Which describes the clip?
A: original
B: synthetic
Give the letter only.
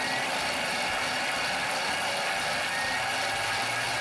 A